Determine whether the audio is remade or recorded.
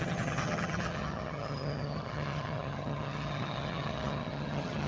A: remade